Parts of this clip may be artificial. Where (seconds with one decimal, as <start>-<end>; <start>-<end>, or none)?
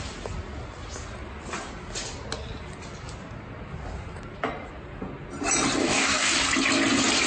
5.8-6.3